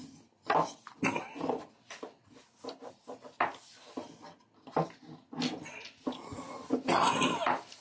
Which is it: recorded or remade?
recorded